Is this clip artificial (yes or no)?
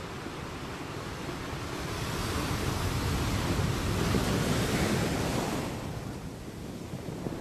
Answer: no